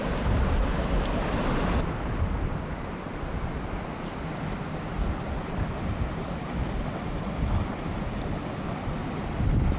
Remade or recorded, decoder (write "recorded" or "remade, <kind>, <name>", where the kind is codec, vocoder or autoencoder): recorded